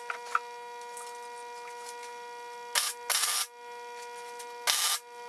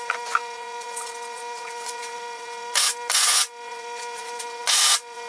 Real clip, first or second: first